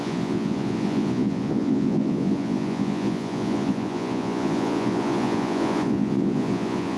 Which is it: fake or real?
fake